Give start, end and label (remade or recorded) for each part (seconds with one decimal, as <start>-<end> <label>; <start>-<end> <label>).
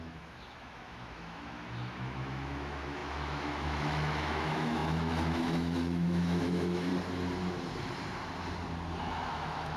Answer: 0.0-6.9 remade; 6.9-9.0 recorded; 9.0-9.8 remade